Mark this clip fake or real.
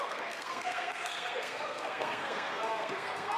fake